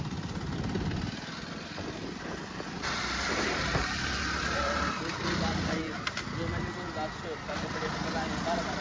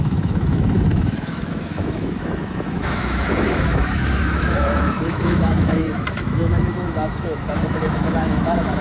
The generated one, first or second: second